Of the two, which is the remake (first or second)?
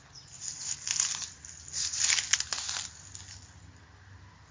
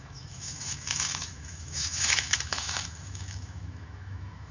second